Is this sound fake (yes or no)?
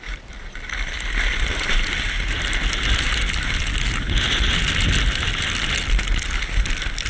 no